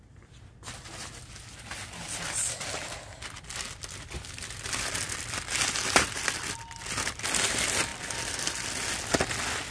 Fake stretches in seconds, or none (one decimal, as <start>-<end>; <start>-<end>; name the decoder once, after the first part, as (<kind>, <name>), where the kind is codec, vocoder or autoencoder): none